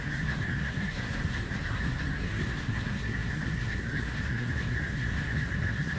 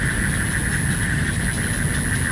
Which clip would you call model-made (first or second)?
first